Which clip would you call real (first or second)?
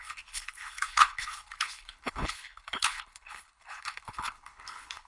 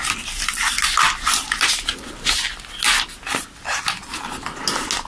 second